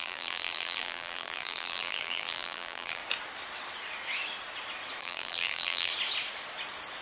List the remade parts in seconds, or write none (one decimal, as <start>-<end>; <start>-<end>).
0.0-3.0; 5.0-5.9